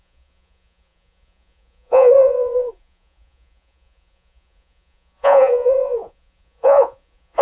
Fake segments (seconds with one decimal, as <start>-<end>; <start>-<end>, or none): 0.0-7.4